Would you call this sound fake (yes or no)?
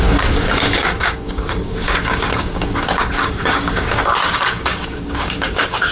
yes